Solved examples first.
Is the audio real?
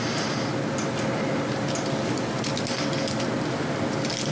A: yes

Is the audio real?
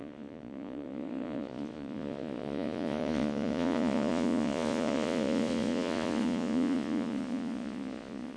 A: no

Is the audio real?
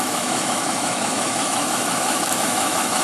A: no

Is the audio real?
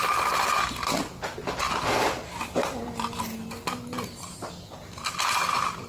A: yes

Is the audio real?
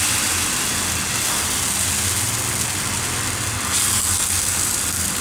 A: yes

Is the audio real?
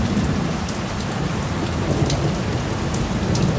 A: yes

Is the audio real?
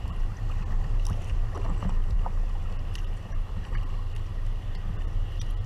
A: yes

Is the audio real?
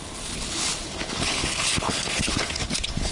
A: no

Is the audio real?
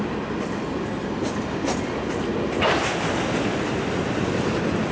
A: yes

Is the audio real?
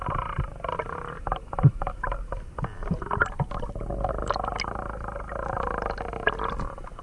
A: yes